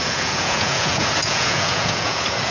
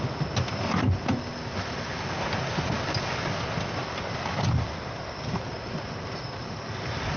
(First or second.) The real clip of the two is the second